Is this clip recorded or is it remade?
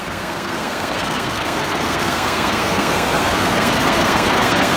remade